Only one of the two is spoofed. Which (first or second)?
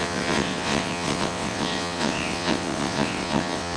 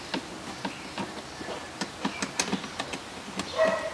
first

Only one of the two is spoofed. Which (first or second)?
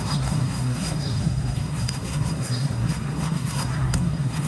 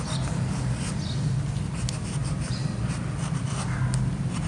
first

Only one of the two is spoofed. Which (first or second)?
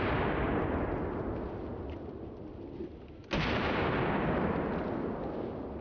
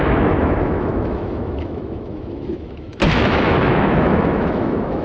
second